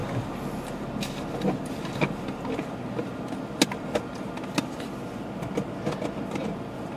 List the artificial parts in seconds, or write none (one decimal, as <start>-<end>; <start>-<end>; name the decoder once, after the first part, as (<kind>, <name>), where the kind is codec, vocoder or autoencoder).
none